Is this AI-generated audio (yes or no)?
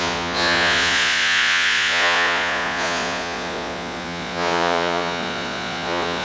yes